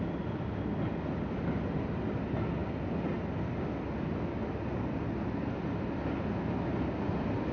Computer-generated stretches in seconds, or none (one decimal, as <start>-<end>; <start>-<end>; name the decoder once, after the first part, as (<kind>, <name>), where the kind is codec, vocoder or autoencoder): none